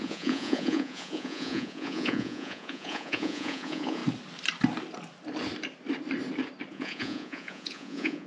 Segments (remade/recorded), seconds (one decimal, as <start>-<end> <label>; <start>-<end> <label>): 0.0-4.0 remade; 4.0-6.7 recorded; 6.7-8.3 remade